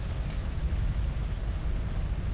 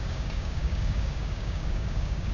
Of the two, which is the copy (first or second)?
second